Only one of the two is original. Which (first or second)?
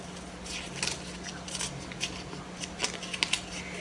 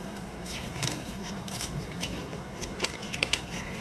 first